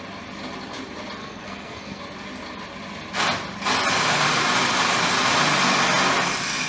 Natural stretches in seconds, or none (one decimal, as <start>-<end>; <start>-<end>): 0.0-1.2; 2.0-6.7

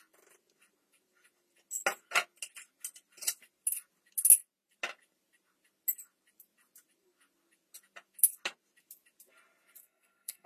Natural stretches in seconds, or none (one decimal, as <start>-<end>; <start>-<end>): 0.0-9.8

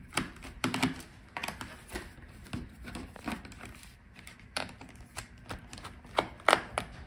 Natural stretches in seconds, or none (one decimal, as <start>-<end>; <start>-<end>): none

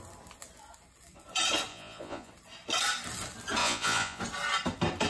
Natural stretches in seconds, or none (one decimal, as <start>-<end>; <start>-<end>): 0.0-1.7; 2.3-3.6; 4.2-5.1

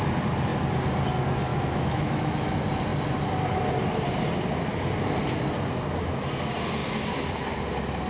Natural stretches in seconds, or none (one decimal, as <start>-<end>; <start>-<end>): 0.0-1.5; 2.5-8.1

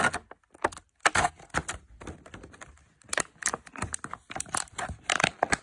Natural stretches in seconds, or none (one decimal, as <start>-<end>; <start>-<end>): 0.0-5.6

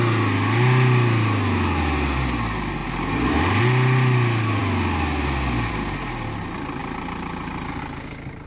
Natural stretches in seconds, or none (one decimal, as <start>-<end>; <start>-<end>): 0.0-2.8; 3.6-6.8; 7.8-8.5

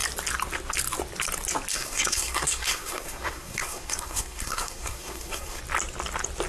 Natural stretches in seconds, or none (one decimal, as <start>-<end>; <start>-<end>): 0.0-1.7; 5.6-6.5